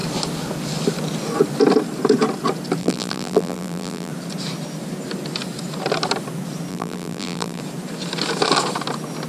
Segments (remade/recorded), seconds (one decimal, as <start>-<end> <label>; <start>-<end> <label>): 0.0-2.8 recorded; 2.8-4.1 remade; 4.1-6.7 recorded; 6.7-7.6 remade; 7.6-9.3 recorded